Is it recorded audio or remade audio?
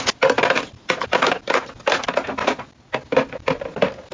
recorded